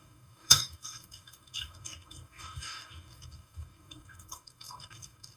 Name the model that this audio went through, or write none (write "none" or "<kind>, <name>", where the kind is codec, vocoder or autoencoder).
codec, DAC